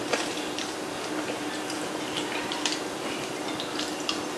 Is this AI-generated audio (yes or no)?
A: no